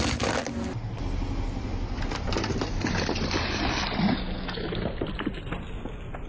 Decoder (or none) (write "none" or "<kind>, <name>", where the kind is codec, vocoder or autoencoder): none